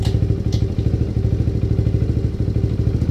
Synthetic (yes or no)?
no